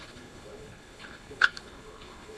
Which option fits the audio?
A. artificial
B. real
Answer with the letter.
A